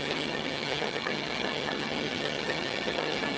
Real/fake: fake